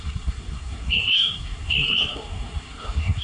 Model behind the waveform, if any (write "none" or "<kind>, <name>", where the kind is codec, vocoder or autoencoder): codec, SNAC